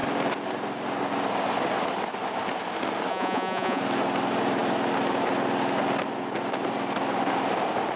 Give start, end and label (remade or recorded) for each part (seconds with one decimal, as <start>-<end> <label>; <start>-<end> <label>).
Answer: 0.0-3.1 recorded; 3.1-3.8 remade; 3.8-8.0 recorded